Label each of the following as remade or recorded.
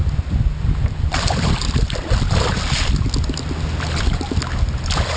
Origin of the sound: recorded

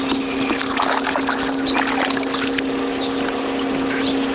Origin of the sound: recorded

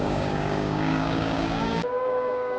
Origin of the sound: remade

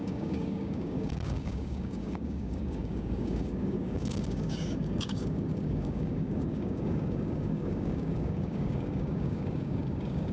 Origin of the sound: remade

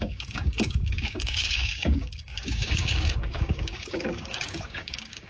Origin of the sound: remade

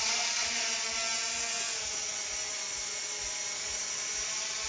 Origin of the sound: recorded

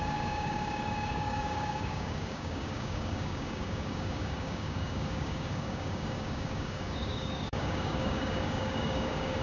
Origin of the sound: remade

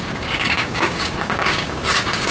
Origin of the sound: remade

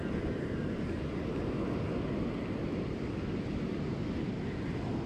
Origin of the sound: recorded